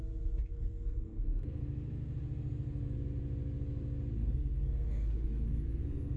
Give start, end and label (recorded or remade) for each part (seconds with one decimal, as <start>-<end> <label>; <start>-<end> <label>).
0.0-0.5 recorded; 0.5-1.6 remade; 1.6-4.2 recorded; 4.2-6.2 remade